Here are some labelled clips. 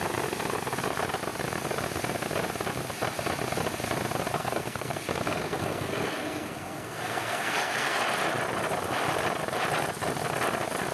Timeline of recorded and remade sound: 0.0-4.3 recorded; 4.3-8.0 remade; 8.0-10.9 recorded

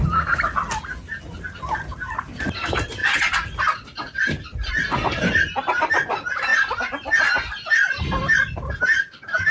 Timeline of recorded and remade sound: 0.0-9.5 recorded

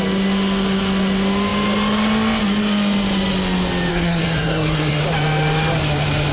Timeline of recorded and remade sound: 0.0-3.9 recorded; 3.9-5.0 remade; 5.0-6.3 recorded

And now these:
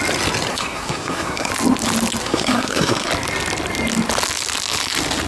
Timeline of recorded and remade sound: 0.0-0.5 recorded; 0.5-1.5 remade; 1.5-2.2 recorded; 2.2-3.1 remade; 3.1-5.3 recorded

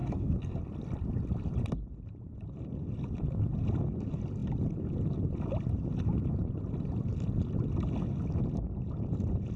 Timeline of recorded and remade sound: 0.0-0.6 remade; 0.6-9.6 recorded

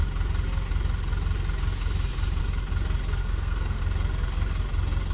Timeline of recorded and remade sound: 0.0-3.2 recorded; 3.2-3.8 remade; 3.8-5.1 recorded

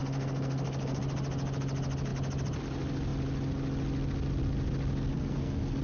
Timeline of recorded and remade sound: 0.0-1.0 remade; 1.0-5.1 recorded; 5.1-5.8 remade